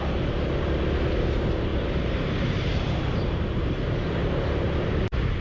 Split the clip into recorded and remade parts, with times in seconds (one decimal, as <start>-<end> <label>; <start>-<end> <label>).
0.0-1.7 recorded; 1.7-4.9 remade; 4.9-5.4 recorded